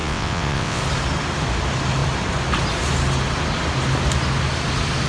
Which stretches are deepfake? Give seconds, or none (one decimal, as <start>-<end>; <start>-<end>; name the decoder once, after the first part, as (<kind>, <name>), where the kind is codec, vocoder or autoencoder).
0.0-0.8 (vocoder, WaveNeXt)